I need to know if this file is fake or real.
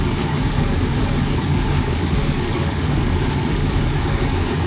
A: fake